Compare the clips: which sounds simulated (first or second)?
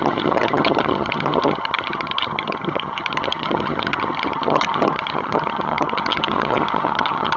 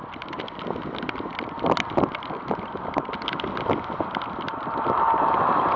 first